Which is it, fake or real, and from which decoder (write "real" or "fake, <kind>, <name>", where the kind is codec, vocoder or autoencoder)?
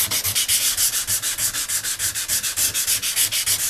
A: real